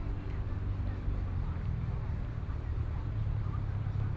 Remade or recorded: recorded